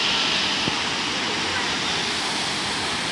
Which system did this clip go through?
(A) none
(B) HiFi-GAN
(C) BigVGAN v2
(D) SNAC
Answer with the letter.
A